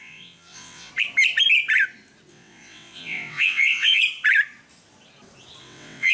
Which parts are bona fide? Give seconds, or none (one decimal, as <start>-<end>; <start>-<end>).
0.9-2.3; 4.0-5.6